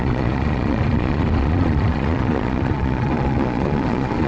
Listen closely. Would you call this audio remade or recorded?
remade